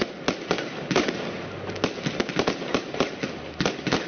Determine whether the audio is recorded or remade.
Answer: recorded